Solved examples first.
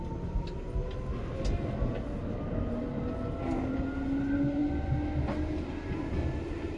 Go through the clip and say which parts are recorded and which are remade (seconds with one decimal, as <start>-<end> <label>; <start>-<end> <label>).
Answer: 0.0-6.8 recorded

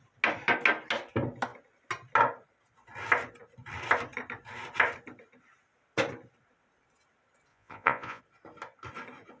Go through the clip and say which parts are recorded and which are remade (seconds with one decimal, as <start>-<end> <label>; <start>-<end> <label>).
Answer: 0.0-7.5 recorded; 7.5-8.2 remade; 8.2-9.4 recorded

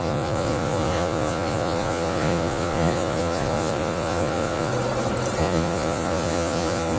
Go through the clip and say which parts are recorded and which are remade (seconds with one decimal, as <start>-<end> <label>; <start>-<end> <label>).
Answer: 0.0-4.7 remade; 4.7-5.4 recorded; 5.4-7.0 remade

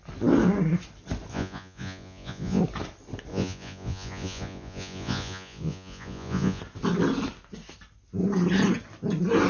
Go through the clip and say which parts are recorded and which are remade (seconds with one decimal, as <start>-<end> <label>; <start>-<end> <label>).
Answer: 0.0-1.3 recorded; 1.3-2.6 remade; 2.6-3.3 recorded; 3.3-6.6 remade; 6.6-9.5 recorded

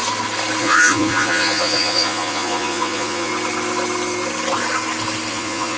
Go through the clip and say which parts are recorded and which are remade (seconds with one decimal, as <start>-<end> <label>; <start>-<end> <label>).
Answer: 0.0-0.6 recorded; 0.6-3.3 remade; 3.3-5.3 recorded; 5.3-5.8 remade

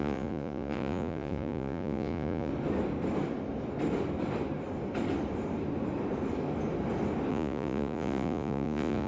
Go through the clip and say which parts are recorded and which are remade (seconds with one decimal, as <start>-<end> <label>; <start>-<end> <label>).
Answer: 0.0-2.5 remade; 2.5-7.3 recorded; 7.3-9.1 remade

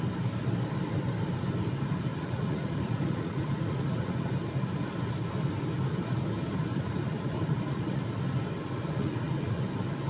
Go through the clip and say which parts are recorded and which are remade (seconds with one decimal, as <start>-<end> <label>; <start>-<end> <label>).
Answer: 0.0-2.1 recorded; 2.1-4.3 remade; 4.3-6.7 recorded; 6.7-8.0 remade; 8.0-8.8 recorded; 8.8-9.6 remade; 9.6-10.1 recorded